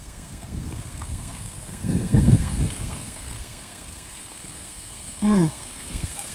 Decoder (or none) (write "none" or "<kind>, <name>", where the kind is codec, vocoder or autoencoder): codec, SNAC